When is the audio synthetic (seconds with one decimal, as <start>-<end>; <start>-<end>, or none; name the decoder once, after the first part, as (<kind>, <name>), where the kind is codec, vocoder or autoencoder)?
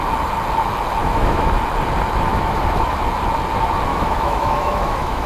1.0-1.5 (autoencoder, DAC-VAE); 2.3-3.0; 3.9-5.3